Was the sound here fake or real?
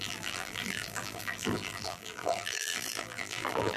fake